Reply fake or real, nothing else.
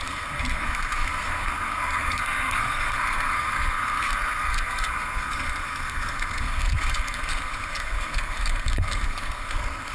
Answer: fake